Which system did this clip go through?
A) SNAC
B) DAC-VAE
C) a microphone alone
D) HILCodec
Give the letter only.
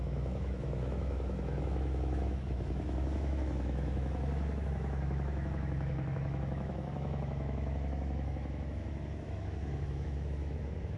B